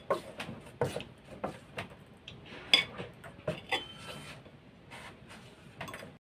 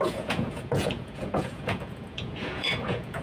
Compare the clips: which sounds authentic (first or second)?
first